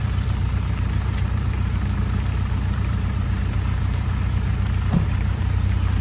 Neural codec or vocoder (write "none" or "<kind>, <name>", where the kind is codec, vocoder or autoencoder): vocoder, BigVGAN v2